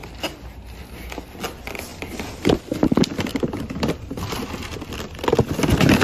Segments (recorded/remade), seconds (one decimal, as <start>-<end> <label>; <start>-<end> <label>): 0.0-6.0 recorded